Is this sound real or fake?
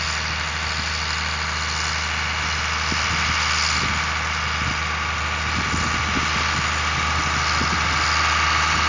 real